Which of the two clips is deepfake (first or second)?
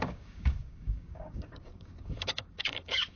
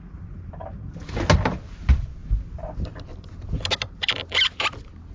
first